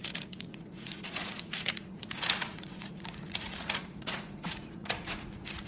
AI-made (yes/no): yes